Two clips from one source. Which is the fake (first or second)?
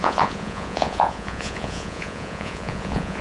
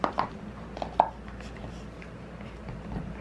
first